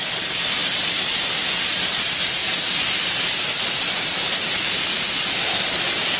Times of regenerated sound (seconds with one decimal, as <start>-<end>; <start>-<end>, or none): 0.0-2.4; 5.0-6.2